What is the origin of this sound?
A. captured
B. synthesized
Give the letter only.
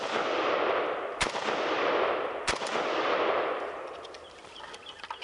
B